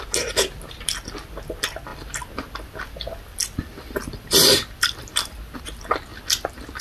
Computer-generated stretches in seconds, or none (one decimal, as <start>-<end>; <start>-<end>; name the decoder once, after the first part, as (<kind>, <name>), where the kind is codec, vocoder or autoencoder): 1.9-5.6 (vocoder, BigVGAN v2)